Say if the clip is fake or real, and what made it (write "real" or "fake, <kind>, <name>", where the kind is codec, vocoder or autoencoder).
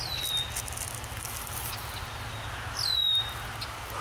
real